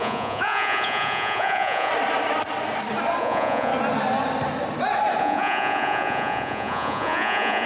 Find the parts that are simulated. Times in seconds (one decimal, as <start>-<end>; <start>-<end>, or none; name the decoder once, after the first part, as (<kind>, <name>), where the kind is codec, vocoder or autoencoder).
0.0-1.9 (vocoder, Vocos); 3.2-3.7; 5.2-7.7